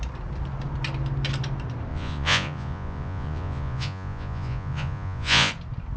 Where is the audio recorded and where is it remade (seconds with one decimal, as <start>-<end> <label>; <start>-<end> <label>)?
0.0-1.9 recorded; 1.9-5.5 remade; 5.5-6.0 recorded